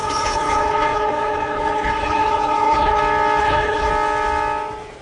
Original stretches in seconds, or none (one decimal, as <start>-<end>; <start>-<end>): 3.0-3.4; 3.9-5.0